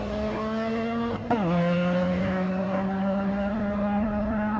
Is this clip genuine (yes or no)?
no